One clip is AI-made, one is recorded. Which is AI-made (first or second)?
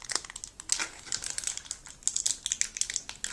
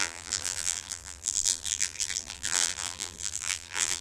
second